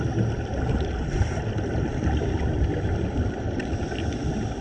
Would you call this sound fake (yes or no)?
no